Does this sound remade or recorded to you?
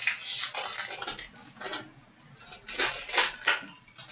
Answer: recorded